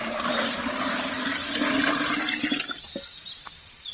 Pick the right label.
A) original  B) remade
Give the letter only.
A